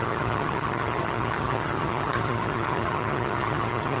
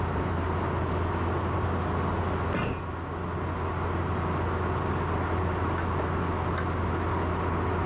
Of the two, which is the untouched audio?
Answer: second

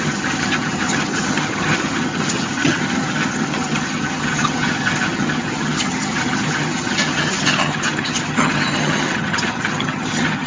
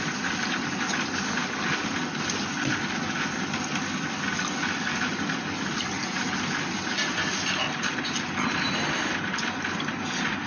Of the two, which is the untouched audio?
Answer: second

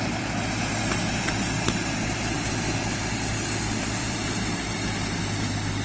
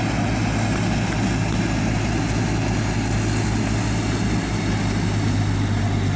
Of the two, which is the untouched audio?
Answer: second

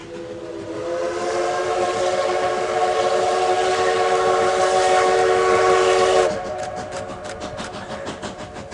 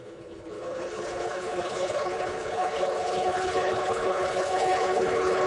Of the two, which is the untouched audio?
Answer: first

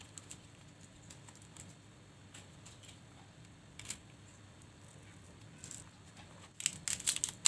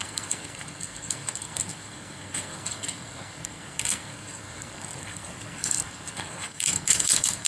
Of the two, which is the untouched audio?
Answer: first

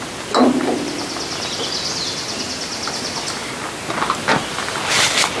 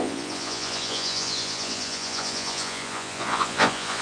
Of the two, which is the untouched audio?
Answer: first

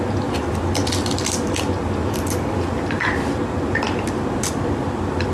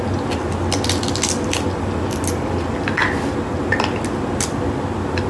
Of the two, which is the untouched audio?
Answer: second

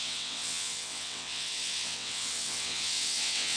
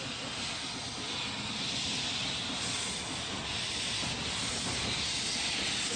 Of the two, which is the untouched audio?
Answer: second